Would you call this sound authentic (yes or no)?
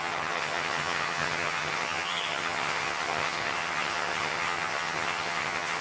no